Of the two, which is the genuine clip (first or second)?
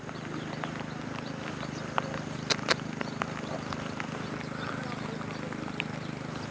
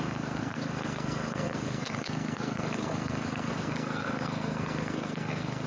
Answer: first